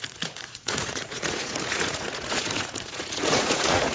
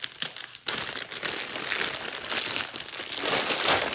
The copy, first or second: first